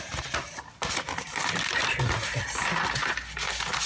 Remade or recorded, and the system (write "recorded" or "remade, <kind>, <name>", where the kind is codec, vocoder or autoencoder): recorded